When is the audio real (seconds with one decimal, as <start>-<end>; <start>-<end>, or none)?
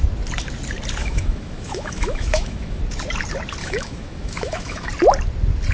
0.0-1.0; 2.8-3.6; 4.9-5.7